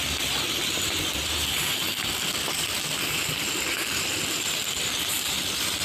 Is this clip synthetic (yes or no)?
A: yes